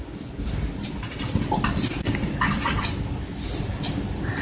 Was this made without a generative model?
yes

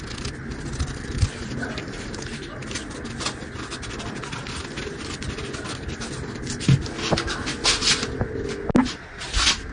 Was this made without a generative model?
yes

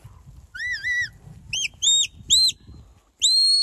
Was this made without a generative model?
yes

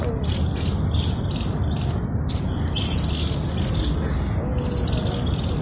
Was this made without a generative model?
yes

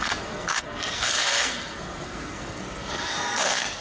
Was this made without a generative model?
no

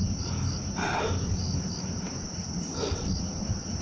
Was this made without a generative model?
yes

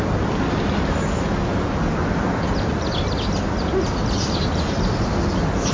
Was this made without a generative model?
yes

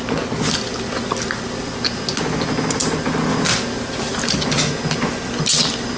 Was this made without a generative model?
yes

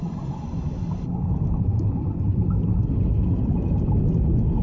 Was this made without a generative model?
yes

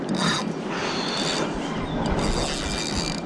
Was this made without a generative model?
yes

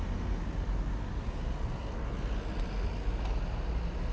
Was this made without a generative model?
yes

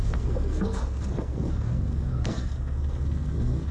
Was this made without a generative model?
no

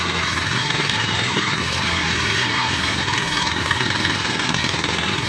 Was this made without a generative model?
no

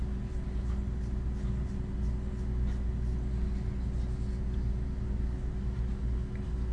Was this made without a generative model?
yes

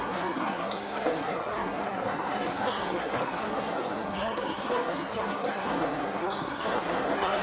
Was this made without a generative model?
no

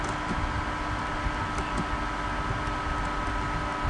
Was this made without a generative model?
yes